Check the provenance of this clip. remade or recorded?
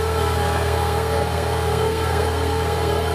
remade